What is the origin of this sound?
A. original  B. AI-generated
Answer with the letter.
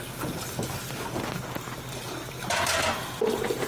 A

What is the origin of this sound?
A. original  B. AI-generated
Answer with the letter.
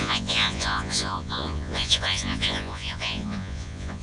B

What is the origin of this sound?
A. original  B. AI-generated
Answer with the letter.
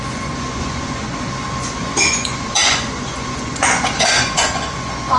B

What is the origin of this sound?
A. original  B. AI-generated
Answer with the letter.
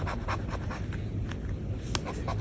A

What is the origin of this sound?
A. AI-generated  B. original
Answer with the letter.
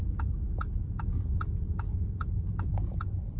A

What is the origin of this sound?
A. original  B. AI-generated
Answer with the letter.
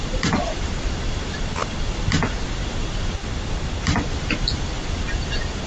A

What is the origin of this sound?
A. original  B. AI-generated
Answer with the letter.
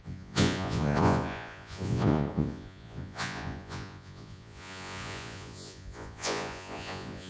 B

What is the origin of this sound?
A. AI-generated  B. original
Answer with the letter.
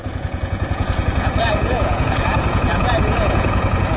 A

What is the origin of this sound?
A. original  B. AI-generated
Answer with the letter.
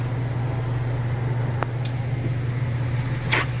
A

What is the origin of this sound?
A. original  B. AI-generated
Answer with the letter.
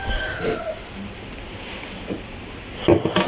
A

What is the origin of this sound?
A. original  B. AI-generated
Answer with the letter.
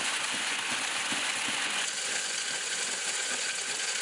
B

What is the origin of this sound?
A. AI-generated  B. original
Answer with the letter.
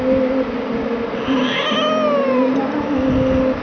B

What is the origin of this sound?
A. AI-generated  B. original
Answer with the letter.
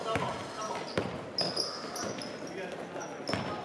B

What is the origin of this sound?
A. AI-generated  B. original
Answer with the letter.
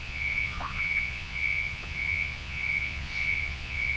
A